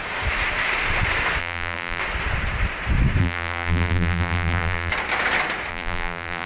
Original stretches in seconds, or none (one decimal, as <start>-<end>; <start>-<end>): 0.0-1.4; 2.0-3.2; 4.9-5.7